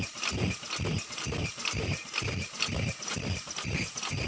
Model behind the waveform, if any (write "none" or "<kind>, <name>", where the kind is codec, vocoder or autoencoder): none